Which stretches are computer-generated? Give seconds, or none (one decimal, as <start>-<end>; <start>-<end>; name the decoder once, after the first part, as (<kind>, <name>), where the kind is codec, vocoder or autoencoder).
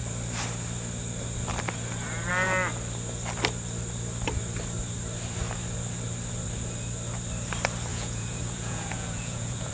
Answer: 7.9-9.7 (vocoder, Vocos)